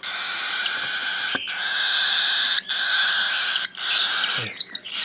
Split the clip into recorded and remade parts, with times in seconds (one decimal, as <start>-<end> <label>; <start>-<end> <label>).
0.0-5.0 recorded